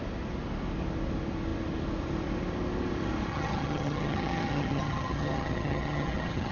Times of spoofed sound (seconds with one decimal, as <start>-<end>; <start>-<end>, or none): 3.3-6.5